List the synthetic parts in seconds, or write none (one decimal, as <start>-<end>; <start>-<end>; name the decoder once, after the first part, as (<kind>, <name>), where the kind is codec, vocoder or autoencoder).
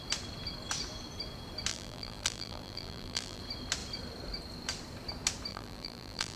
1.7-3.4 (vocoder, BigVGAN v2); 5.5-6.4